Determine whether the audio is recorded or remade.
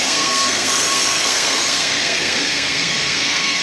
remade